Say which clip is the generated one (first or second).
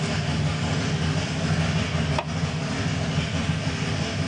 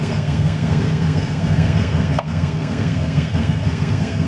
second